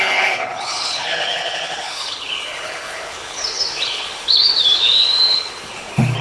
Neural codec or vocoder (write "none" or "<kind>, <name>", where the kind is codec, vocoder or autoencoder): codec, HILCodec